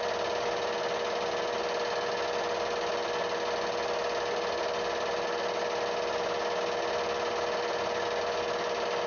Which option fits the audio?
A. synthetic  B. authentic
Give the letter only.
B